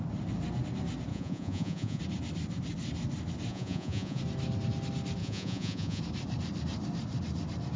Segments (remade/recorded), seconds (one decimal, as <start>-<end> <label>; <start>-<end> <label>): 0.0-1.1 recorded; 1.1-2.0 remade; 2.0-3.5 recorded; 3.5-4.2 remade; 4.2-5.2 recorded; 5.2-6.0 remade; 6.0-7.8 recorded